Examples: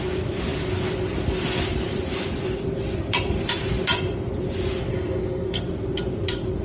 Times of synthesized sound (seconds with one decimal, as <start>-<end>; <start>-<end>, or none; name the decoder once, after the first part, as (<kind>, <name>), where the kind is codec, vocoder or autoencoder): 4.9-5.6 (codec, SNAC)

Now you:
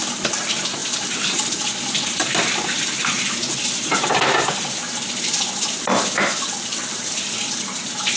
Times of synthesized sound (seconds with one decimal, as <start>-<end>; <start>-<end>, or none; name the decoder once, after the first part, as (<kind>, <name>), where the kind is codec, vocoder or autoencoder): none

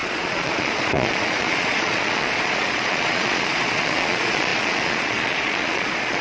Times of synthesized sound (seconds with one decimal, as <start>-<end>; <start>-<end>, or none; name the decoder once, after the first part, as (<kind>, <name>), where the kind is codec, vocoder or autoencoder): 0.0-6.2 (vocoder, Vocos)

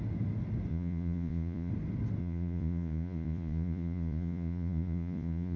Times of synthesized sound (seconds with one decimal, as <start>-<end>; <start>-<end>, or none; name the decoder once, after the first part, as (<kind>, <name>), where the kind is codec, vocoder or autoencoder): 0.7-1.7 (vocoder, Vocos); 2.2-5.6

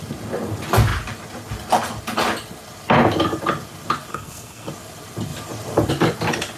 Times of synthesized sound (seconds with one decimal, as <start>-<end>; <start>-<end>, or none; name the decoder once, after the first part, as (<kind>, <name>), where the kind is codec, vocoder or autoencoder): 4.1-4.7 (codec, SNAC)

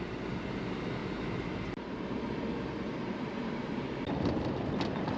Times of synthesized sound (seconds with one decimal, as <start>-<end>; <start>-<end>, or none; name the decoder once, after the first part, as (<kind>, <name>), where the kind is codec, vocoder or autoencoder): none

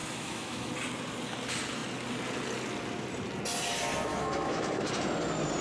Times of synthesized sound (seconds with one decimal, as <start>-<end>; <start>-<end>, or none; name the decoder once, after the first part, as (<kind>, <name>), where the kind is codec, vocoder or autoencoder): 0.0-0.7 (autoencoder, DAC-VAE); 4.1-4.9